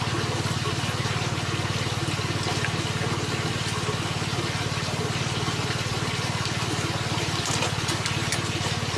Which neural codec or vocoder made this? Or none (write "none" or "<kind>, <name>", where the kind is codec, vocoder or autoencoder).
none